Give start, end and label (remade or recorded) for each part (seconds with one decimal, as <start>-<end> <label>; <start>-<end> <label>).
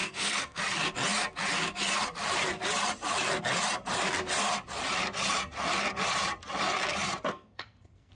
0.0-0.6 remade; 0.6-7.3 recorded; 7.3-8.1 remade